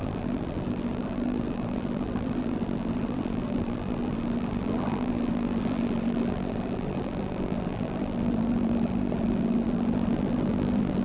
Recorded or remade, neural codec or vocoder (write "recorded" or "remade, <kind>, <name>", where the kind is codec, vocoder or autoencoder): remade, vocoder, BigVGAN v2